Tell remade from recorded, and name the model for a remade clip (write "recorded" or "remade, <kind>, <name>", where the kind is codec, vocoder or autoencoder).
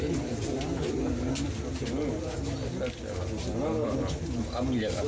recorded